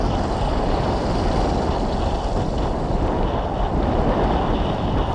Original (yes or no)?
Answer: yes